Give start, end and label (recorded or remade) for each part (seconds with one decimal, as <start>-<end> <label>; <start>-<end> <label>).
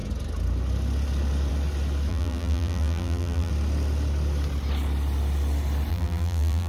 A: 0.0-2.1 recorded; 2.1-3.5 remade; 3.5-5.9 recorded; 5.9-6.7 remade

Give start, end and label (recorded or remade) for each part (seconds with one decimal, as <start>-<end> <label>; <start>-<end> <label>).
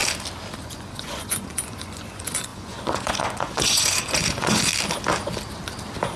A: 0.0-0.6 recorded; 0.6-4.7 remade; 4.7-6.2 recorded